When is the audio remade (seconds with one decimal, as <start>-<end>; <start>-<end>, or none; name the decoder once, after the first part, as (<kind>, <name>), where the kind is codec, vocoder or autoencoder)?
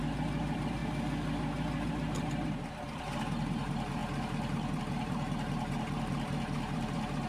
0.0-0.8 (vocoder, BigVGAN v2); 1.9-7.3